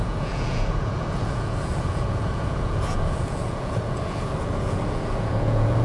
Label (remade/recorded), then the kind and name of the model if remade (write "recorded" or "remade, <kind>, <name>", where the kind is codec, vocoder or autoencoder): remade, vocoder, Vocos